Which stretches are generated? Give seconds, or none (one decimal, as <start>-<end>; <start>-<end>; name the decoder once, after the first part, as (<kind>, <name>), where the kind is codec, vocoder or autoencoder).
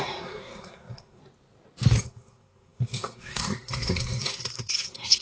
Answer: 0.0-1.2 (codec, SNAC); 2.0-5.2